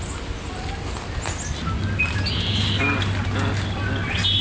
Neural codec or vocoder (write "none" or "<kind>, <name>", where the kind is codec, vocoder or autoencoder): none